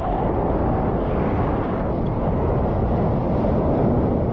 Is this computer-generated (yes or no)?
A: no